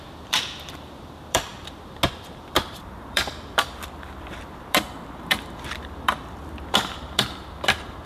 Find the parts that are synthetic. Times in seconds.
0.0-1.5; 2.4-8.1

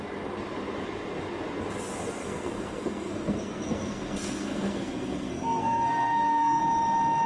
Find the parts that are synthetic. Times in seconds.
2.2-6.6

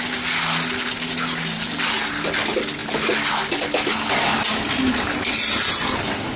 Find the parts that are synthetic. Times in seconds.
none